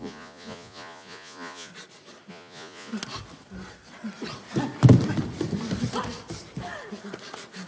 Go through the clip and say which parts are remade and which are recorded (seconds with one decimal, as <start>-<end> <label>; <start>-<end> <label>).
0.0-1.7 remade; 1.7-2.3 recorded; 2.3-2.9 remade; 2.9-7.7 recorded